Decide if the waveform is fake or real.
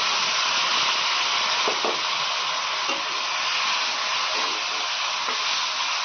real